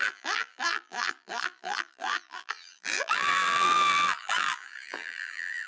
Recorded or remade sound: remade